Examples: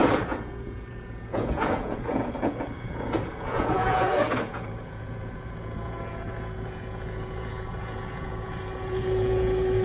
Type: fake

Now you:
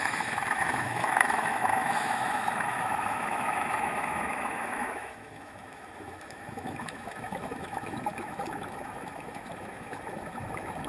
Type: fake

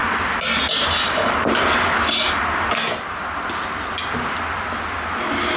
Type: real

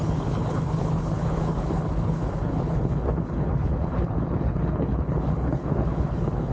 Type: fake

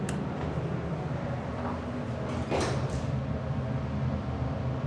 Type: real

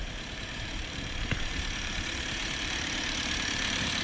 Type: fake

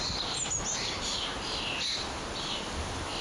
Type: real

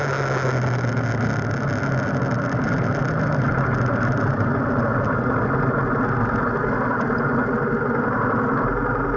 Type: real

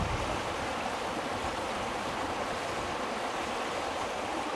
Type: real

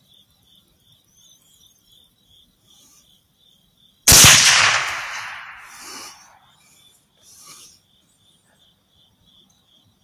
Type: real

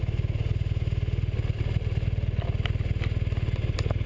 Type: real